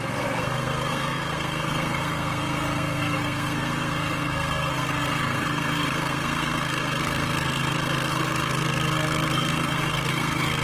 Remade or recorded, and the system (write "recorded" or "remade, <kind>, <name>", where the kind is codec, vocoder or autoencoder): remade, codec, SNAC